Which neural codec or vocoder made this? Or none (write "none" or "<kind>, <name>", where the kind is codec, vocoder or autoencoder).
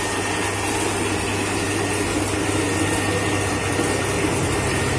none